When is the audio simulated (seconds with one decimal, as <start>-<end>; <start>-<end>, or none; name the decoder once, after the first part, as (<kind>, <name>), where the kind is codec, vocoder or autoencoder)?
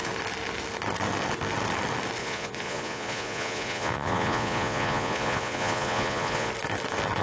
2.2-6.5 (vocoder, Vocos)